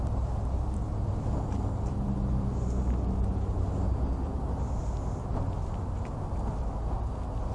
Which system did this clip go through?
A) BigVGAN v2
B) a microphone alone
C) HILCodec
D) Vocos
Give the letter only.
B